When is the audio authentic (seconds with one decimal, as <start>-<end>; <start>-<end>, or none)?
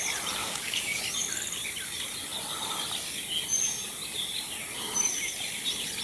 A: 0.0-0.4; 1.0-6.0